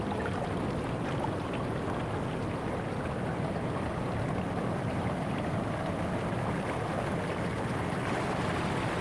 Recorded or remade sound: recorded